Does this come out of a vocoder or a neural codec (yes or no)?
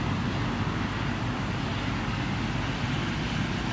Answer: no